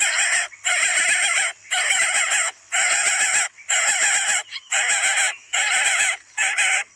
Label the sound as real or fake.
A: real